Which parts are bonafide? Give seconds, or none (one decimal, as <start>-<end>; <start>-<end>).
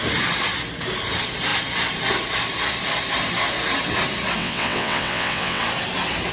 0.0-4.4; 5.6-6.3